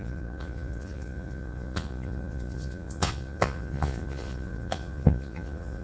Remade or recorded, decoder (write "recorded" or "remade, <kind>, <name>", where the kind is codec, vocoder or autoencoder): remade, vocoder, Vocos